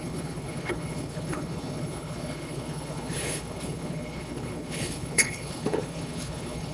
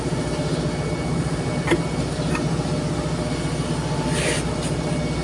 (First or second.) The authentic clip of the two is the second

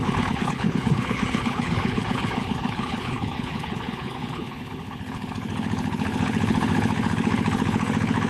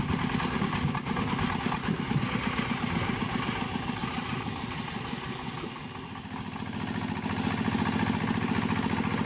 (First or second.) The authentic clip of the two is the second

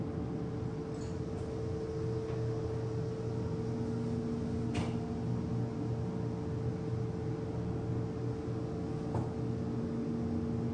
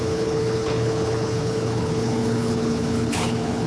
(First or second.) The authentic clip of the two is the first